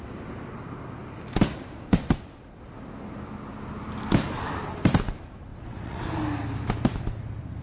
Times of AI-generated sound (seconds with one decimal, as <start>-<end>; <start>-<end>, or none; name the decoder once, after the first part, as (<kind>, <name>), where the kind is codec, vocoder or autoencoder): 5.5-6.1 (vocoder, WaveNeXt)